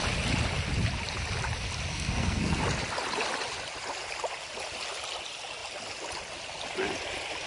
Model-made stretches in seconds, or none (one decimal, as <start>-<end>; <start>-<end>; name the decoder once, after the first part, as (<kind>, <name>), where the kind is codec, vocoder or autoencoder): 1.9-2.6 (codec, SNAC)